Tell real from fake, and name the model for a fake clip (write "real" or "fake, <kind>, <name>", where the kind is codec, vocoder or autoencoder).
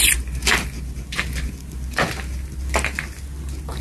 real